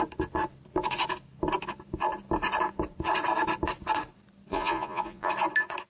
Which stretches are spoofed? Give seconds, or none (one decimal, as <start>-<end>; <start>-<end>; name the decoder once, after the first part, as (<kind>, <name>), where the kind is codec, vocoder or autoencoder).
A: 4.5-5.3 (vocoder, Vocos)

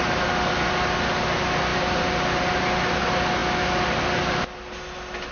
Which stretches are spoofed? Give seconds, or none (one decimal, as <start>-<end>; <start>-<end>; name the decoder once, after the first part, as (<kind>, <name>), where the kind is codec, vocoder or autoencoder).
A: none

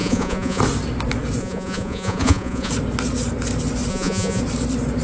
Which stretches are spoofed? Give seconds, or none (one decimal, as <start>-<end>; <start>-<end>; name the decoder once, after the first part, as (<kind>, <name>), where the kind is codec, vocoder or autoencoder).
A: 0.0-0.6 (vocoder, Vocos); 1.4-2.7; 3.9-4.4

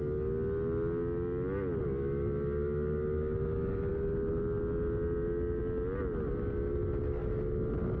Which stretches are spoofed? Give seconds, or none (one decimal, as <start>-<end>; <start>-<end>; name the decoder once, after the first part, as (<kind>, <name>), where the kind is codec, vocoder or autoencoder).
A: none

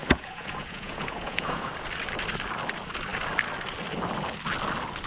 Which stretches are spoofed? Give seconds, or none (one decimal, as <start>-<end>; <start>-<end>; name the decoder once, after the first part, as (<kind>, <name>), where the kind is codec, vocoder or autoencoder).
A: 0.0-1.7 (vocoder, Vocos)

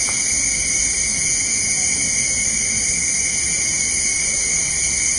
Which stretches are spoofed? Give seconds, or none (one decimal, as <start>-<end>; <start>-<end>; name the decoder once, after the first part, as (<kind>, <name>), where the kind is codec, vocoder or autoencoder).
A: 1.1-1.8 (vocoder, Vocos)